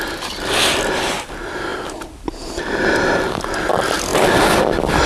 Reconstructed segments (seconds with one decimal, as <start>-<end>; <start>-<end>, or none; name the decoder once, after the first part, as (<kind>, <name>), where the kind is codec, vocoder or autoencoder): none